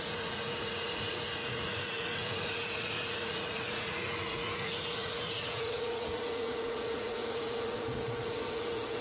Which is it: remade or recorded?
remade